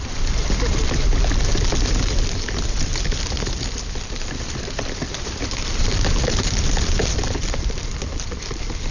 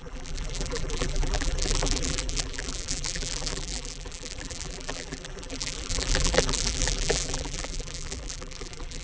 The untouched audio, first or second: first